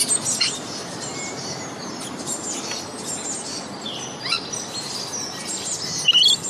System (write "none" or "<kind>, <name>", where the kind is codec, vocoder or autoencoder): none